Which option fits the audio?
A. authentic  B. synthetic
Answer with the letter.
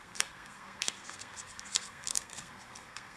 B